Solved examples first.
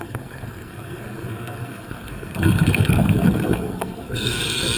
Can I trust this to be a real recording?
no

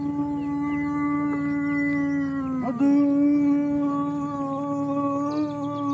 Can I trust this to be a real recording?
yes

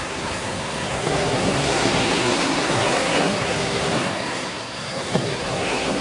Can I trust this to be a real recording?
no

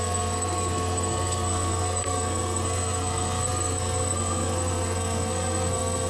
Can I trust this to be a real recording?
no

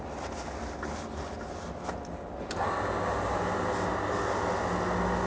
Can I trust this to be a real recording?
yes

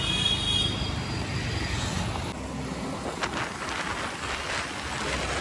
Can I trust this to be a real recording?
yes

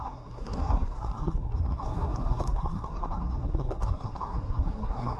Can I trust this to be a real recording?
no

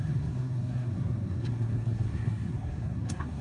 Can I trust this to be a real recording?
no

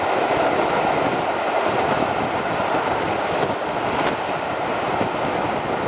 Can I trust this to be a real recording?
yes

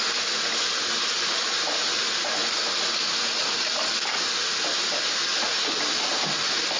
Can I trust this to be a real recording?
yes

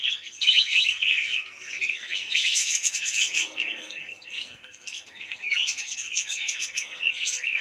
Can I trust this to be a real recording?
no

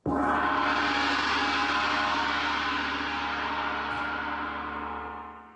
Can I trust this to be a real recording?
yes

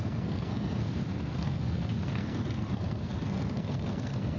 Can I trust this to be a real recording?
no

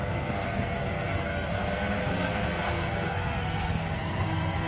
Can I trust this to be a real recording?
no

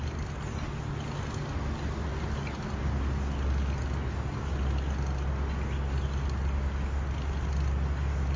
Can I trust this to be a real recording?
yes